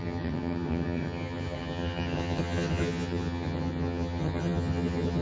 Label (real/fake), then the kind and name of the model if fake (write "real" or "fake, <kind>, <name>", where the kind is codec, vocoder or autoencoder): fake, vocoder, HiFi-GAN